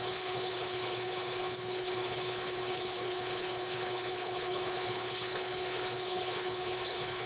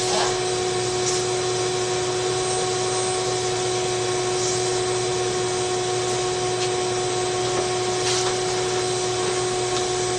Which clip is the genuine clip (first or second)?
second